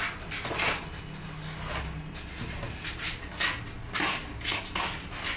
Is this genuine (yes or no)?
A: yes